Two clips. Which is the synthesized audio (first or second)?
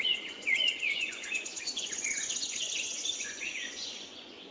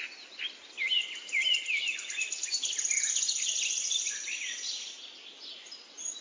first